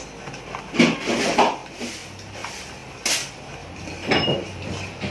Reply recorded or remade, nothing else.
recorded